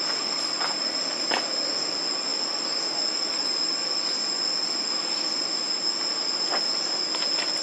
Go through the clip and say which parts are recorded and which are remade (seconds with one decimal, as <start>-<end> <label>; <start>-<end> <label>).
0.0-7.6 recorded